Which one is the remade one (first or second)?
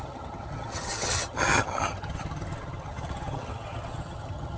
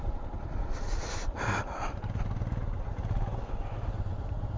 first